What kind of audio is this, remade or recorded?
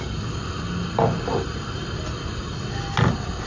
recorded